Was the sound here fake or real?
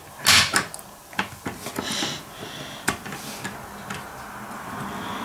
real